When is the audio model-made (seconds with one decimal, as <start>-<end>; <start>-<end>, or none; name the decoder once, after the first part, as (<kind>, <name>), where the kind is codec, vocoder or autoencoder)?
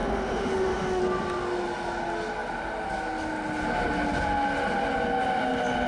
0.0-1.0 (autoencoder, DAC-VAE)